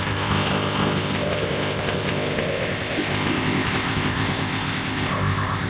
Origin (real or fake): fake